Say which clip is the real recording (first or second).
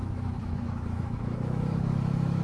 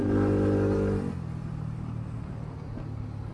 second